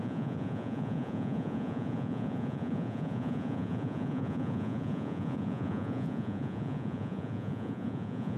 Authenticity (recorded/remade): remade